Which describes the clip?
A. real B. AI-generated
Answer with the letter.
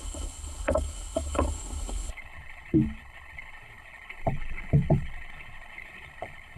B